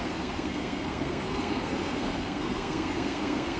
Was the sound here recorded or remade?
remade